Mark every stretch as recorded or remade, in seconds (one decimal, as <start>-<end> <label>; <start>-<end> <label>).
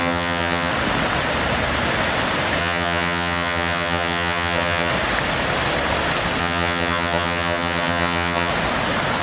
0.0-0.7 remade; 0.7-2.6 recorded; 2.6-4.9 remade; 4.9-6.4 recorded; 6.4-8.5 remade; 8.5-9.2 recorded